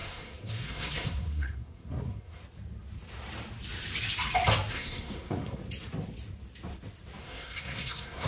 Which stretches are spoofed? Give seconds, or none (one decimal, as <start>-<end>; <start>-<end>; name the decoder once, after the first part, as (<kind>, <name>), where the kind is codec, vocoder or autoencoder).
0.0-2.4 (codec, SNAC); 4.7-5.6; 7.2-8.3